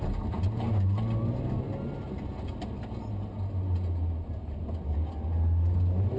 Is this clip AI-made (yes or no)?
no